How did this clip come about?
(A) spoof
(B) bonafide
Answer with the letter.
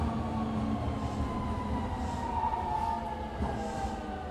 B